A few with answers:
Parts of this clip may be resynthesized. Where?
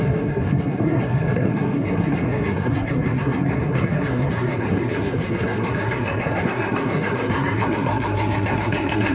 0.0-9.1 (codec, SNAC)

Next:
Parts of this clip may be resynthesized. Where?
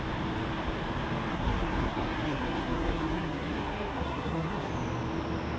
1.3-4.7 (codec, SNAC)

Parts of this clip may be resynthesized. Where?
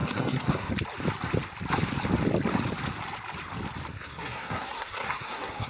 0.0-0.7 (codec, SNAC); 3.9-5.7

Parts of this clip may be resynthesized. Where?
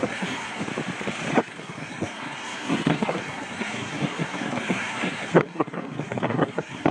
0.0-0.7 (codec, SNAC); 1.3-6.9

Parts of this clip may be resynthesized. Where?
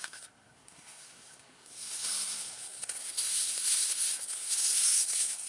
0.0-5.5 (codec, SNAC)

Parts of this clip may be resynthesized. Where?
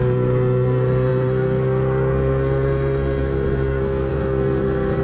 0.0-5.0 (codec, SNAC)